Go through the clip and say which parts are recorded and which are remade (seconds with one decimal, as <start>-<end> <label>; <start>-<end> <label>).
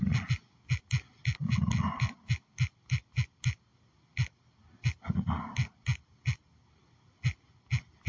0.0-8.1 recorded